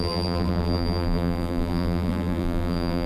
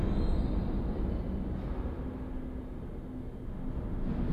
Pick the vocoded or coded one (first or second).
first